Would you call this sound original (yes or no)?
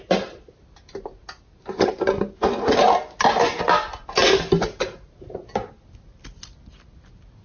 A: yes